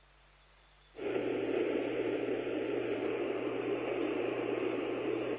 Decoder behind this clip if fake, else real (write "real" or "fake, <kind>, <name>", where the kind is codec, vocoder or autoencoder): fake, vocoder, BigVGAN v2